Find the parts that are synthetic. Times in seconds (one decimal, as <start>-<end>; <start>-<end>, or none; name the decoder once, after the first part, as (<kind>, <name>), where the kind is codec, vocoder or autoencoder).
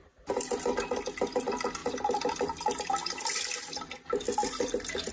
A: none